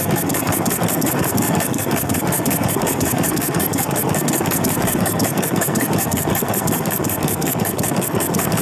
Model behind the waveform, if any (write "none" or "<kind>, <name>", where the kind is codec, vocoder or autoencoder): codec, SNAC